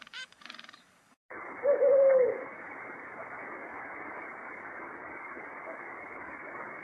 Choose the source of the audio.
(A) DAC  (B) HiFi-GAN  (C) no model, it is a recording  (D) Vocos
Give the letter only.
A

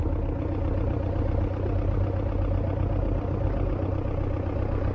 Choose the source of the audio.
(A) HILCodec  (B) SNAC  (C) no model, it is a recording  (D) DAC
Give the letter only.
C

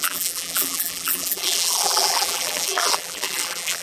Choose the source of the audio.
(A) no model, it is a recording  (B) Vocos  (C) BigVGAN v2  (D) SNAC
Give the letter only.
C